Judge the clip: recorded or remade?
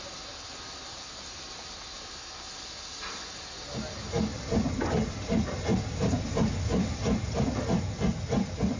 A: recorded